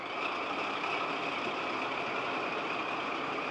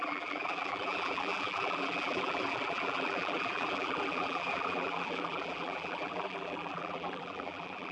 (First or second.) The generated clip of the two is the second